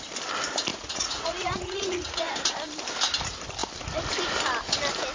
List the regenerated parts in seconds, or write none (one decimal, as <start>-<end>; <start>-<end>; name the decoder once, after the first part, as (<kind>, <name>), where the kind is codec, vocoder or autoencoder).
0.7-2.5 (vocoder, Vocos)